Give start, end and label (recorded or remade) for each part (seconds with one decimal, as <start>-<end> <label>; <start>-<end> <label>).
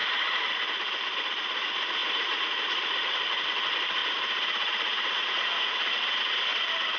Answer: 0.0-0.5 remade; 0.5-2.0 recorded; 2.0-3.2 remade; 3.2-4.0 recorded; 4.0-5.9 remade; 5.9-7.0 recorded